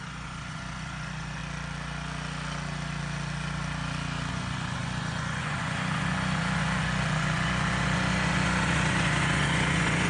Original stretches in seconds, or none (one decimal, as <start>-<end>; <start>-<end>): 1.4-4.3